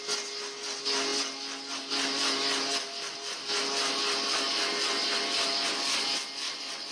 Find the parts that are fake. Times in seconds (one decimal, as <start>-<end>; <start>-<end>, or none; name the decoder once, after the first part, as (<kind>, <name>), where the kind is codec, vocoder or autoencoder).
none